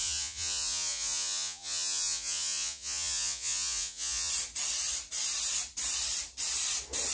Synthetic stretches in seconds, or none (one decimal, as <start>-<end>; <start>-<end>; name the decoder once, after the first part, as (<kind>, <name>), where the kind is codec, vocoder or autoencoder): 0.0-4.3 (vocoder, Vocos)